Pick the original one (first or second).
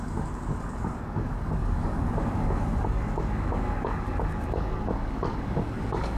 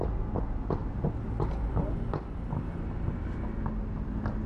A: second